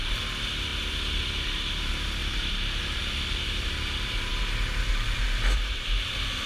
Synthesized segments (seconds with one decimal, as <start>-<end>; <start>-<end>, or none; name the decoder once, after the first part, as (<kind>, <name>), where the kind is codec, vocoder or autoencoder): 0.0-2.2 (vocoder, BigVGAN v2); 2.8-4.3; 4.9-6.5